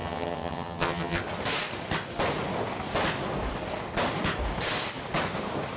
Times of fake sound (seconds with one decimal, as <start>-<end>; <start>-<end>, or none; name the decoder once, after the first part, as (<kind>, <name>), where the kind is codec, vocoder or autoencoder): 0.0-1.2 (vocoder, HiFi-GAN)